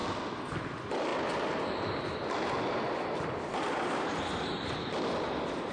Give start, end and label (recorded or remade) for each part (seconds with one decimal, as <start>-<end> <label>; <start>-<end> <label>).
0.0-0.6 recorded; 0.6-5.7 remade